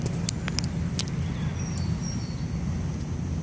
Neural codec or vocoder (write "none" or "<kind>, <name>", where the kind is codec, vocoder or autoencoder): none